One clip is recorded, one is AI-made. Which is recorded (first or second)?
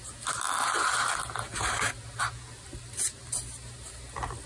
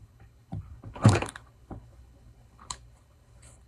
first